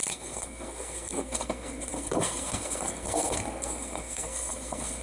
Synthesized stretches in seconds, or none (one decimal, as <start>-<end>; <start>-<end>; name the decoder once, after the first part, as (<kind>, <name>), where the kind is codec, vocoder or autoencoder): 0.0-5.0 (codec, SNAC)